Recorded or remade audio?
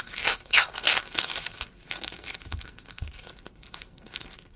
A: remade